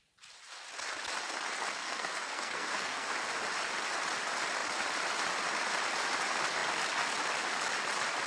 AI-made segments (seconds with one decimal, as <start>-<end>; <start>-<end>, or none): 1.8-3.1